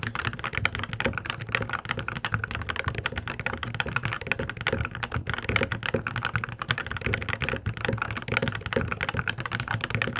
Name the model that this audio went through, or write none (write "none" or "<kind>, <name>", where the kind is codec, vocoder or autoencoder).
none